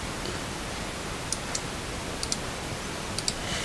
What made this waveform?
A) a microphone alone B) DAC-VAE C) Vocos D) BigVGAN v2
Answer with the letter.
A